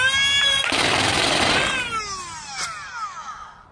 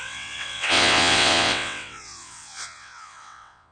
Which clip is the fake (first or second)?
second